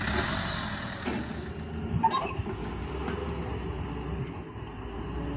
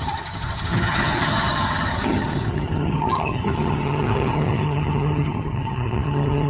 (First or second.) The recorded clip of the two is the first